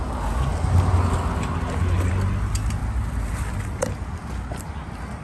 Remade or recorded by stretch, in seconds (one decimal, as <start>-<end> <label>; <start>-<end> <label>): 0.0-5.2 recorded